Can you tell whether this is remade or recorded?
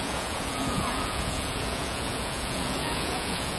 remade